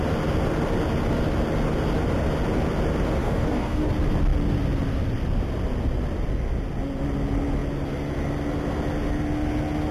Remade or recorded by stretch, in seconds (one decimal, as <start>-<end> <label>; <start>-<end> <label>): 0.0-3.2 recorded; 3.2-3.9 remade; 3.9-9.9 recorded